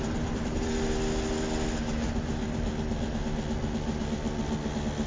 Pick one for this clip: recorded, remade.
recorded